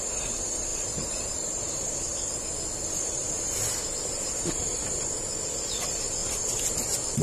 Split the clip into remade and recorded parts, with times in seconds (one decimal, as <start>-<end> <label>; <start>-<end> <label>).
0.0-7.2 recorded

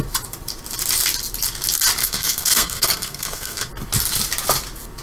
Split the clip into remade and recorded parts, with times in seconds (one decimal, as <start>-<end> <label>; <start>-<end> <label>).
0.0-2.0 recorded; 2.0-3.7 remade; 3.7-5.0 recorded

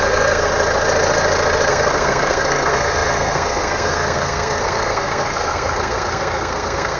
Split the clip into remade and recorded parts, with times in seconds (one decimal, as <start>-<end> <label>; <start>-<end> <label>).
0.0-0.5 remade; 0.5-1.7 recorded; 1.7-7.0 remade

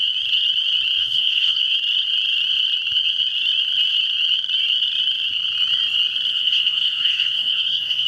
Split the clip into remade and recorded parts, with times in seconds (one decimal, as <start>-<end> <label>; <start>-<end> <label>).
0.0-1.0 recorded; 1.0-1.6 remade; 1.6-6.3 recorded; 6.3-8.1 remade

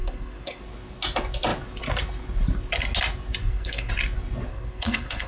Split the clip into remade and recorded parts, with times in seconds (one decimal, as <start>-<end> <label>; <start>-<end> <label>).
0.0-0.6 remade; 0.6-3.4 recorded; 3.4-3.9 remade; 3.9-4.5 recorded; 4.5-5.3 remade

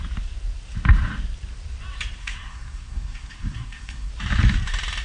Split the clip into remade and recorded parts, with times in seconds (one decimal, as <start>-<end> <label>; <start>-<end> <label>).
0.0-2.2 recorded; 2.2-4.1 remade; 4.1-5.0 recorded

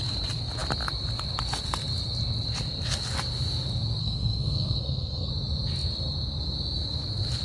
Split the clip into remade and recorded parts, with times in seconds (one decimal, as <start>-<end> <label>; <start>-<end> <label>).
0.0-4.0 recorded; 4.0-5.3 remade; 5.3-7.4 recorded